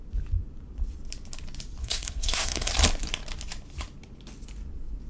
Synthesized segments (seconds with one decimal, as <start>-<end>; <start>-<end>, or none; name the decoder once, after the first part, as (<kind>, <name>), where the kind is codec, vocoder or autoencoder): 1.8-2.7 (codec, SNAC)